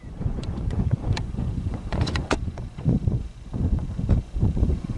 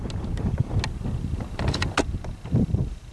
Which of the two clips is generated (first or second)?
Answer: first